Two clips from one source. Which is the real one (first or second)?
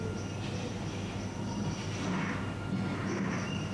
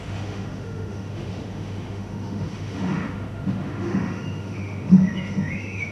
first